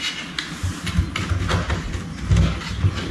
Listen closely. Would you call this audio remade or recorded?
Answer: recorded